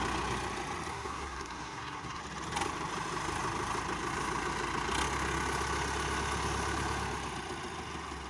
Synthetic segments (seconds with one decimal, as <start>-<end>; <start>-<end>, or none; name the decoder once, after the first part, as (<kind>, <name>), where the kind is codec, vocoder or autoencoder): 0.9-2.2 (codec, SNAC)